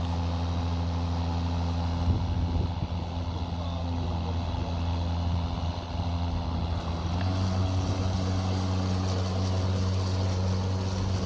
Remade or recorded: recorded